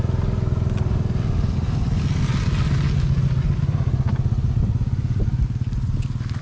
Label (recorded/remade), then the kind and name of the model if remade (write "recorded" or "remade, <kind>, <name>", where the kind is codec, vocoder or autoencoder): recorded